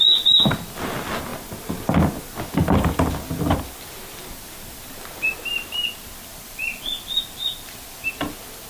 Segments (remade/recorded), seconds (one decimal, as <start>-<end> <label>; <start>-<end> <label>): 0.0-6.3 recorded; 6.3-7.2 remade; 7.2-8.7 recorded